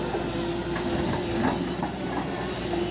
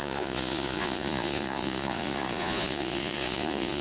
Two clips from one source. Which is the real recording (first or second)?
first